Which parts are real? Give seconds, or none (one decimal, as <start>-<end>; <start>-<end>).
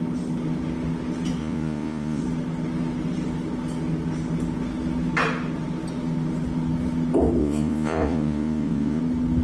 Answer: 0.0-1.4; 2.2-7.4; 9.0-9.4